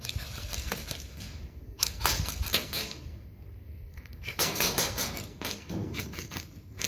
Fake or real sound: fake